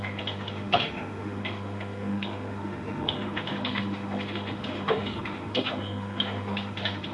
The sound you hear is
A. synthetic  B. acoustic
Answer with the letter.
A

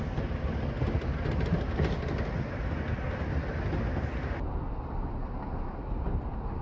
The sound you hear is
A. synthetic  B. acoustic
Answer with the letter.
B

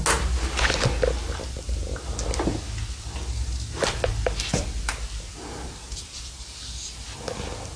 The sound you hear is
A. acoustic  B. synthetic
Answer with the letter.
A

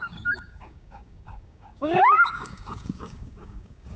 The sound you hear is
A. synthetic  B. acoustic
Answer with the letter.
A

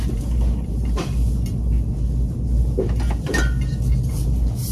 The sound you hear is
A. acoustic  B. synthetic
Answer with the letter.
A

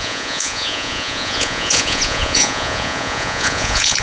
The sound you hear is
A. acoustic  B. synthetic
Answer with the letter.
B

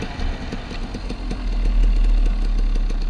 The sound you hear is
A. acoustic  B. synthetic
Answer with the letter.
A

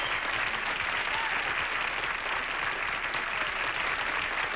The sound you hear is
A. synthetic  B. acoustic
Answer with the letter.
B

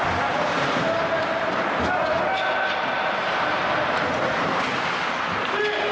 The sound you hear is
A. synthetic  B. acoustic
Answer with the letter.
B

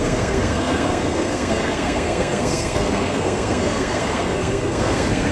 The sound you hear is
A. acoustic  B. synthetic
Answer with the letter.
B